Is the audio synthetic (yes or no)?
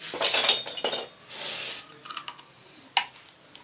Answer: no